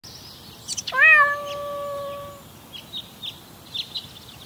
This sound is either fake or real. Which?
real